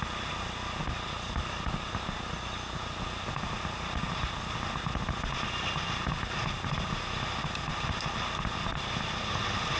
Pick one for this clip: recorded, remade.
recorded